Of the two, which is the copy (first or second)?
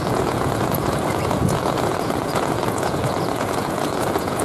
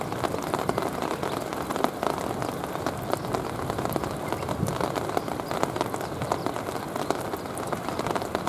first